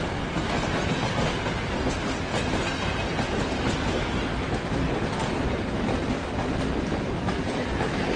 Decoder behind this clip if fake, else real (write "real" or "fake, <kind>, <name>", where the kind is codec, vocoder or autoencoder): real